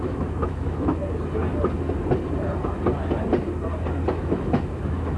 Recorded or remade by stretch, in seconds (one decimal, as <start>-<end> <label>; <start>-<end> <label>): 0.0-1.0 remade; 1.0-4.1 recorded; 4.1-5.2 remade